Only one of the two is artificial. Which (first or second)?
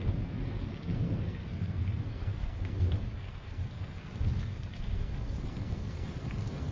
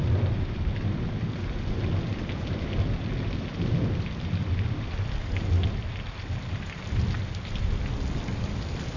first